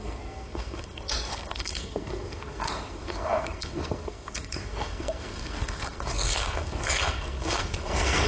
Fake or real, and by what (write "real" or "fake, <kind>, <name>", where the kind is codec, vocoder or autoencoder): fake, codec, SNAC